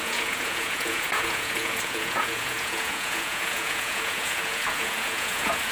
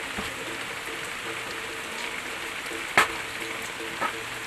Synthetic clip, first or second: first